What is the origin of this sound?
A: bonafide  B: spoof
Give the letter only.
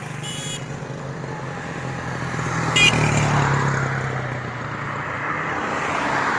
A